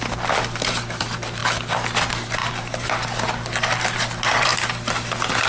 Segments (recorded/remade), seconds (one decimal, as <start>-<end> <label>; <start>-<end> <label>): 0.0-5.5 recorded